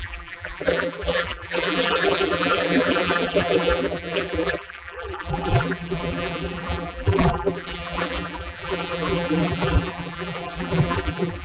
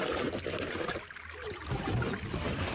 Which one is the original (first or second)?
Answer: second